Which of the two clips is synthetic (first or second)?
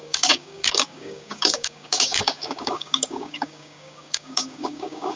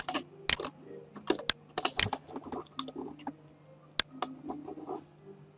first